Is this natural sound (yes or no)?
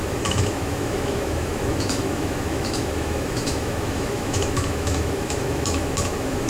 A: no